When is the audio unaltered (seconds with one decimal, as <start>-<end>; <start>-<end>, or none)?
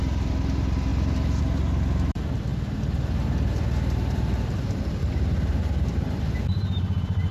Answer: none